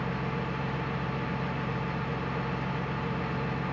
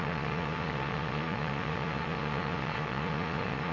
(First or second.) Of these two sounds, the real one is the first